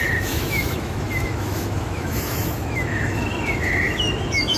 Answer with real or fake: fake